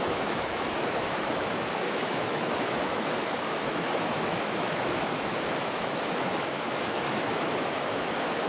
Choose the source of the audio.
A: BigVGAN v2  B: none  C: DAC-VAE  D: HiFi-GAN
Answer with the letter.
C